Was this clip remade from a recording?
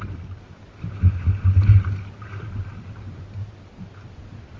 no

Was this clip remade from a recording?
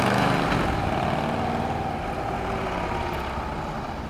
no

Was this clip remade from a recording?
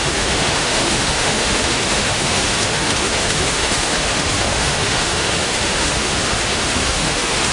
yes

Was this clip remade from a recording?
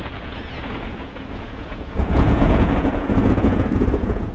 yes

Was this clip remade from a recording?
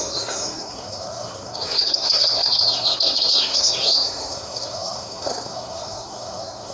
yes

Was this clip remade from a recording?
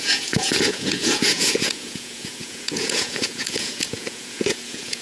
yes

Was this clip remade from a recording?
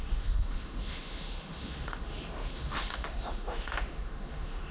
yes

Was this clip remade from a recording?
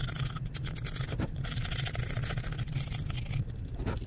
no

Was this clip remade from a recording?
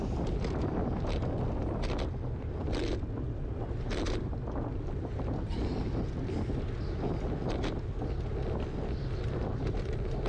no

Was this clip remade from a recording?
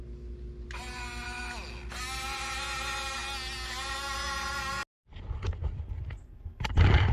no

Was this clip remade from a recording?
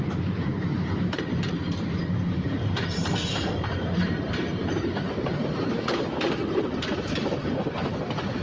yes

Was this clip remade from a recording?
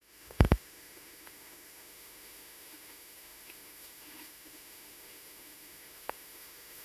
yes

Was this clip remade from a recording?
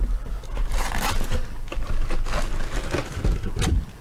no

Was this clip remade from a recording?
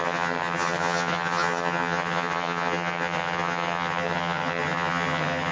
yes